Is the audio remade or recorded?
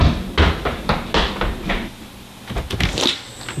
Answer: recorded